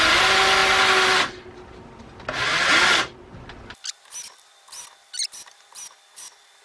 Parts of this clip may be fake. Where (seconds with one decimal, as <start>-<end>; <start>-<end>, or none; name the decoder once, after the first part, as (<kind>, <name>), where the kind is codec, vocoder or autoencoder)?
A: none